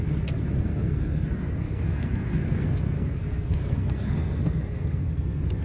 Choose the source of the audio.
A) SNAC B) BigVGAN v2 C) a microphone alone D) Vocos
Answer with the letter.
A